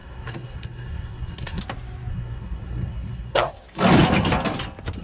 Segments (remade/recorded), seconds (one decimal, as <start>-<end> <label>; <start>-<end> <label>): 0.0-1.6 remade; 1.6-2.1 recorded; 2.1-3.5 remade; 3.5-5.0 recorded